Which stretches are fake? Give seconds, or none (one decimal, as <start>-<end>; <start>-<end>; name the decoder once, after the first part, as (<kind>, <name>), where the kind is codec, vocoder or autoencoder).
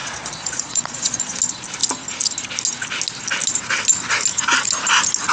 0.0-1.4 (vocoder, Vocos)